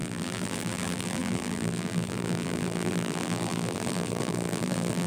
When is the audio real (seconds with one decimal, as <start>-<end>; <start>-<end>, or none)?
none